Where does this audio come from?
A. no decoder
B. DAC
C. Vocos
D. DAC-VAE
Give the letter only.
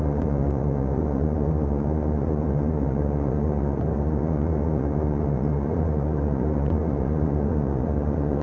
C